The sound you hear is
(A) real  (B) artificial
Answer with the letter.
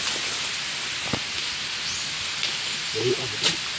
A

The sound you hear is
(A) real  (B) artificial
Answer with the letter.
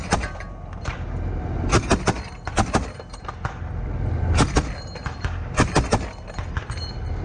A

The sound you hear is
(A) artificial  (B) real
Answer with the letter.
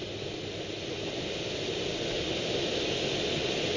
B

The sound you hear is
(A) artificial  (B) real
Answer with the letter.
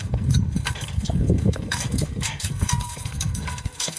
A